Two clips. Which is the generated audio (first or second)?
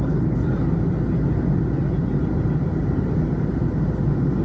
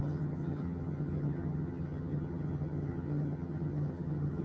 second